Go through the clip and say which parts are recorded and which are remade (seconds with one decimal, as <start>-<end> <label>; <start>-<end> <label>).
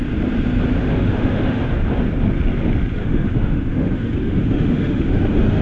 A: 0.0-0.8 recorded; 0.8-1.6 remade; 1.6-3.0 recorded; 3.0-5.6 remade